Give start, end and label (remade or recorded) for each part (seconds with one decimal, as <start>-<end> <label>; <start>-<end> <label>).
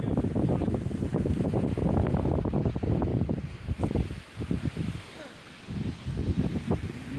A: 0.0-3.1 recorded; 3.1-4.6 remade; 4.6-7.2 recorded